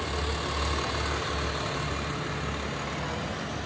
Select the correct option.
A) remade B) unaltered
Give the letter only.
B